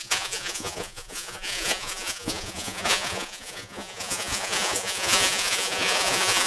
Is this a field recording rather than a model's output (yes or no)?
no